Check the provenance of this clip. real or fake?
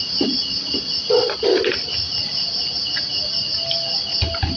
real